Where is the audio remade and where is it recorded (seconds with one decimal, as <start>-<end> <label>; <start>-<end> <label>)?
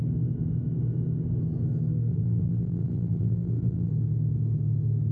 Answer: 0.0-2.1 recorded; 2.1-3.9 remade; 3.9-5.1 recorded